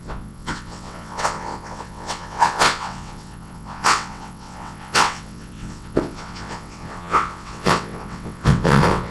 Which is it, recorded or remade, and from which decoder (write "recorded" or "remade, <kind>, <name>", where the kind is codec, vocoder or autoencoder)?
remade, vocoder, WaveNeXt